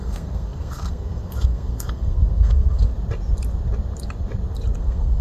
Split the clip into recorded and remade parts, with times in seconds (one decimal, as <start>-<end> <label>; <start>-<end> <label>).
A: 0.0-2.9 remade; 2.9-4.8 recorded; 4.8-5.2 remade